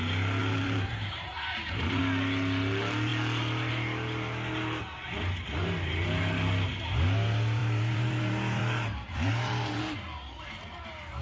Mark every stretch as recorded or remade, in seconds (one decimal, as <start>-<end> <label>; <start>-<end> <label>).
0.0-0.4 recorded; 0.4-2.0 remade; 2.0-7.6 recorded; 7.6-9.8 remade; 9.8-11.2 recorded